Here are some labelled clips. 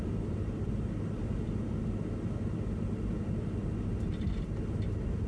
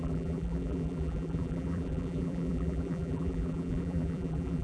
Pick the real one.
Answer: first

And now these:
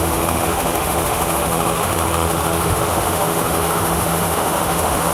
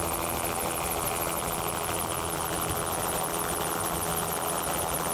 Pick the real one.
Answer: second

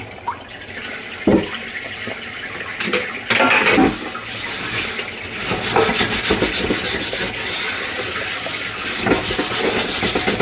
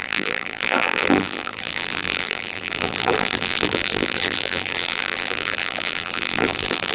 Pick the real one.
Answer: first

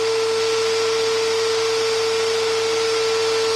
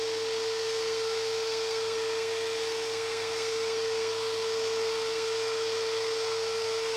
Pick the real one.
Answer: first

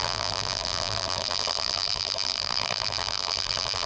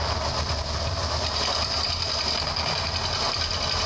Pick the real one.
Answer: second